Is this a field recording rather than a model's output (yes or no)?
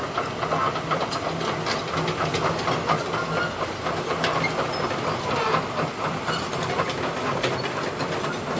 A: yes